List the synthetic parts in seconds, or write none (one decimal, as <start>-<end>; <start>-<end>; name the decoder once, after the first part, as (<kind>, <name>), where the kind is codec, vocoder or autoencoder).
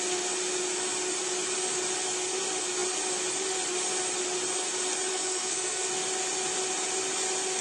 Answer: 5.1-5.9 (codec, SNAC)